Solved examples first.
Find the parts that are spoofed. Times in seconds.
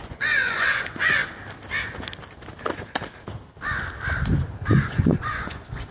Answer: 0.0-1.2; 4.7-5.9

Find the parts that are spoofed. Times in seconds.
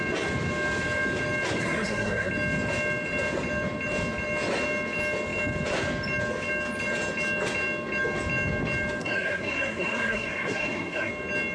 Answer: 1.6-2.3; 9.0-11.1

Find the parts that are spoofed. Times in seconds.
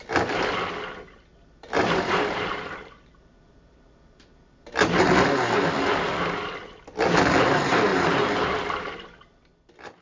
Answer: 1.3-4.7; 7.9-9.2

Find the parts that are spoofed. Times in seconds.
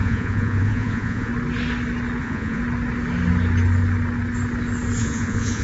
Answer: 0.0-1.3; 2.2-2.6; 5.0-5.6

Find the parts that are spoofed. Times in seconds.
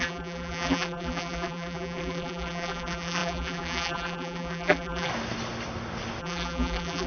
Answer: 0.0-5.1; 6.2-7.1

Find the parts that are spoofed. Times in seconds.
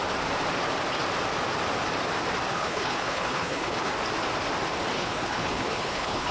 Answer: 2.5-3.9; 5.0-6.3